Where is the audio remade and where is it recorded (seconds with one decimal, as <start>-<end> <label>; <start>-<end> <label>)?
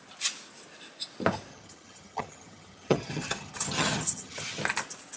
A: 0.0-1.5 recorded; 1.5-4.6 remade; 4.6-5.2 recorded